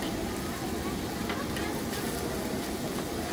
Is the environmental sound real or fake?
real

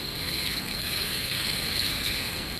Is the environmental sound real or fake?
fake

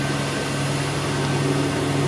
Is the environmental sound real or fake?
real